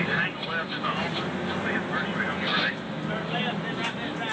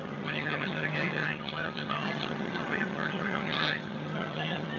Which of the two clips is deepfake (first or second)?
second